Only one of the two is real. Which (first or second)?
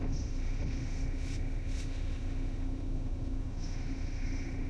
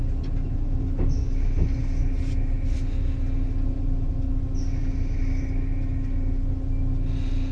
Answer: second